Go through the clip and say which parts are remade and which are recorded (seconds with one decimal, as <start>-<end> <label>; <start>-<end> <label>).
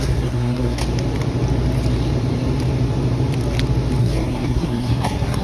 0.0-0.8 remade; 0.8-4.0 recorded; 4.0-5.4 remade